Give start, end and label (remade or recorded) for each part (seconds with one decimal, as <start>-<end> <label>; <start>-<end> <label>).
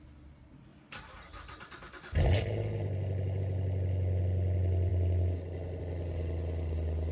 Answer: 0.0-7.1 recorded